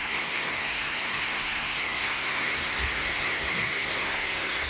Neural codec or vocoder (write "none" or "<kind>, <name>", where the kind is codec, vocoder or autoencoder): codec, SNAC